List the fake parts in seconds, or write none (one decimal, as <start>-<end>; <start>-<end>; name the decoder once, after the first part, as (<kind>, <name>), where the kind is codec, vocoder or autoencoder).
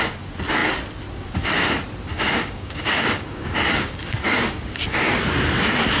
2.1-4.8 (codec, DAC)